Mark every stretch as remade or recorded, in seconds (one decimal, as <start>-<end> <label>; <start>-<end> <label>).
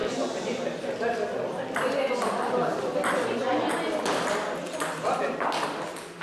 0.0-6.2 recorded